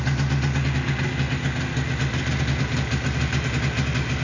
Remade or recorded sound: recorded